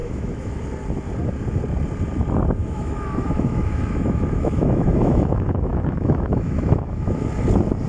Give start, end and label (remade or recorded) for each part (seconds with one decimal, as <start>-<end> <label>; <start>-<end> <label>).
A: 0.0-0.6 remade; 0.6-2.6 recorded; 2.6-7.3 remade; 7.3-7.9 recorded